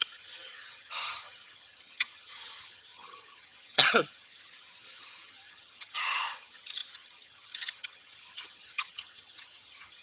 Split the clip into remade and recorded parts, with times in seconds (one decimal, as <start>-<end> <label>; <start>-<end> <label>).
0.0-10.0 remade